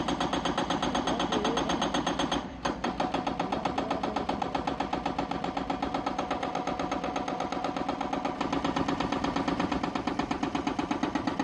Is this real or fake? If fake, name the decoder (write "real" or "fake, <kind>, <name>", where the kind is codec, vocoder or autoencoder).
real